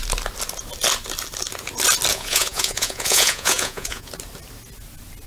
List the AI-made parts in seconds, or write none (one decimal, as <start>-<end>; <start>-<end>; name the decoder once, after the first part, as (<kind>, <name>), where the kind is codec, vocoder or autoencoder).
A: 2.1-4.1 (vocoder, Vocos)